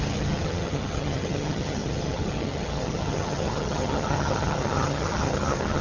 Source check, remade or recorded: remade